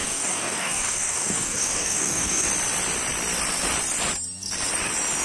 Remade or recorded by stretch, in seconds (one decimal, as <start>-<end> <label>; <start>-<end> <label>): 0.0-2.5 remade; 2.5-5.2 recorded